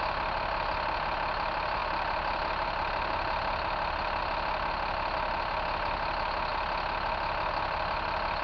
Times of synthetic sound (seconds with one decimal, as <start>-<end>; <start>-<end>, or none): none